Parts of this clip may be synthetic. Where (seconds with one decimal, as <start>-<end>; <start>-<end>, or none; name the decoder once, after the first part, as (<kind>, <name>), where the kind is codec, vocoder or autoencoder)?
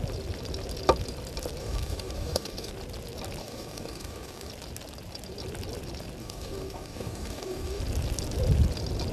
1.6-2.7 (codec, DAC); 3.4-4.5; 6.2-7.8